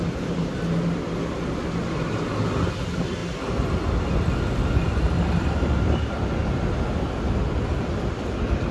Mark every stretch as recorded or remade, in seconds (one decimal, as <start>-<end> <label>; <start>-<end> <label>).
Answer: 0.0-4.8 recorded; 4.8-6.3 remade; 6.3-8.7 recorded